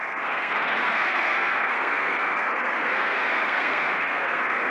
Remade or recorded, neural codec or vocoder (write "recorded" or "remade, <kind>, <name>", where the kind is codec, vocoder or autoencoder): remade, codec, SNAC